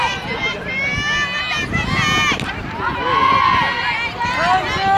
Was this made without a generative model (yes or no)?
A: yes